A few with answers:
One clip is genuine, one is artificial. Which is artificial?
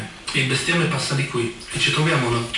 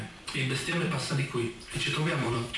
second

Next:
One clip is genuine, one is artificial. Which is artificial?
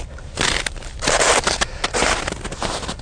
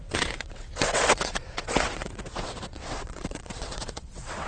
second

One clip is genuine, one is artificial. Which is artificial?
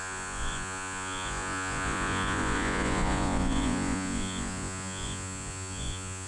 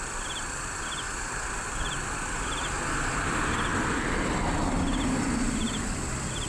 first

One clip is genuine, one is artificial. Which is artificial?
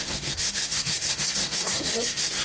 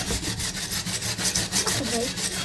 first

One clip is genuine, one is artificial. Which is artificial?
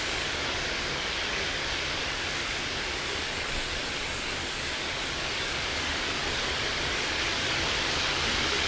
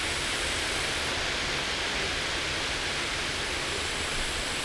first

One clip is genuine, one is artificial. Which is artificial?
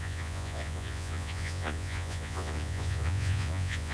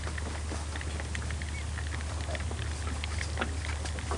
first